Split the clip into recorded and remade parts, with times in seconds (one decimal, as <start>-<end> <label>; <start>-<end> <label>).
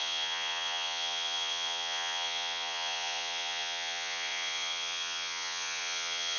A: 0.0-6.4 remade